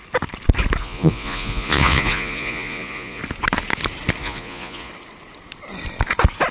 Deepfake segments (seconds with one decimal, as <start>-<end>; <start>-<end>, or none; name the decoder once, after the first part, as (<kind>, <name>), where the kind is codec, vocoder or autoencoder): 0.8-3.2 (vocoder, Vocos); 4.2-4.9